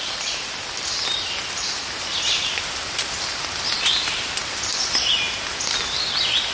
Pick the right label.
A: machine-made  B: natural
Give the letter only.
B